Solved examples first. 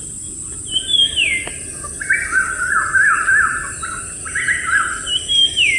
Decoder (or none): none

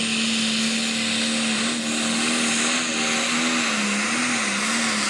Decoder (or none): none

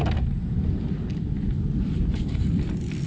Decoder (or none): none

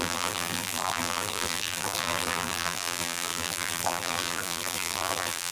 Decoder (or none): vocoder, BigVGAN v2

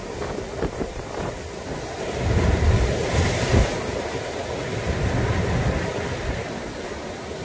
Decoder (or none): vocoder, BigVGAN v2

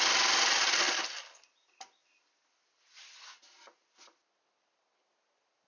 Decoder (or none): none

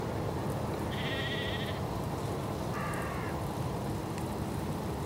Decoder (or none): vocoder, BigVGAN v2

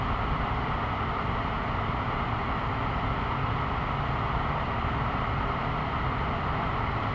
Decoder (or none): none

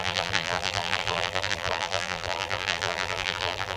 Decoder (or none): vocoder, BigVGAN v2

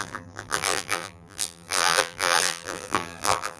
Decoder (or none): vocoder, BigVGAN v2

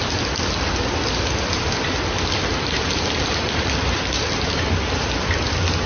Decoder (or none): vocoder, BigVGAN v2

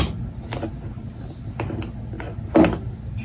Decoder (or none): none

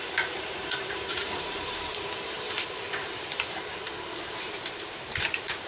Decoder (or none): vocoder, BigVGAN v2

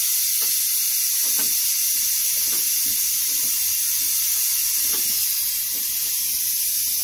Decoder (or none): none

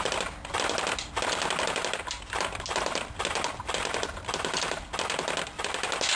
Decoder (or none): none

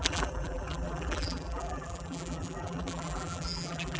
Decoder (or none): vocoder, BigVGAN v2